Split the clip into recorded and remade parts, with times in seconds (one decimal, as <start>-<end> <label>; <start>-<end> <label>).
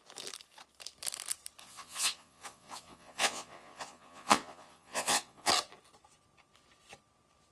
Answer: 0.0-1.6 recorded; 1.6-5.5 remade; 5.5-7.5 recorded